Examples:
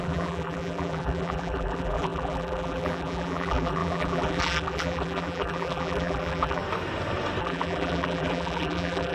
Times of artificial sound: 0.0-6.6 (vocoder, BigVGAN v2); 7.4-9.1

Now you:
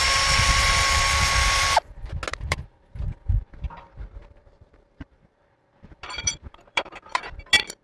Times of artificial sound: 2.3-3.0 (vocoder, BigVGAN v2); 4.2-7.3

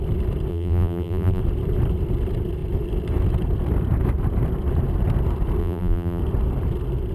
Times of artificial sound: 0.5-1.4 (vocoder, BigVGAN v2); 5.6-6.2